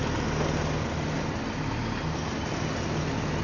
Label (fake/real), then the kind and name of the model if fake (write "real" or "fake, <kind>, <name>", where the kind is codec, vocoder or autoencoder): real